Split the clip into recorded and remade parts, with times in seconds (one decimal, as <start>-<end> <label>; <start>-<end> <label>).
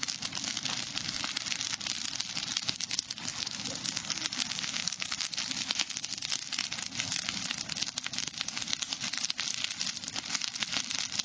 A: 0.0-3.8 recorded; 3.8-5.4 remade; 5.4-11.2 recorded